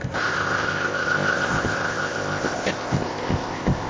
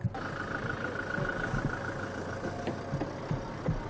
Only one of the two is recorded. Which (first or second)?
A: second